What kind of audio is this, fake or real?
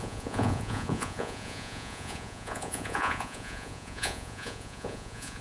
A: fake